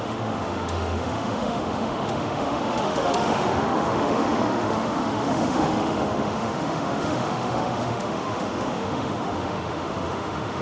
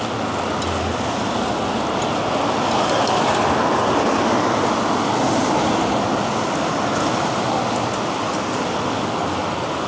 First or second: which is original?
second